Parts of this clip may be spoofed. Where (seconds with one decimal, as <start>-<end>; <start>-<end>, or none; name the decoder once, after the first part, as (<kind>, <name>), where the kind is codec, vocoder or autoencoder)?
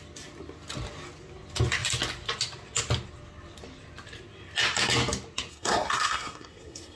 5.5-7.0 (codec, SNAC)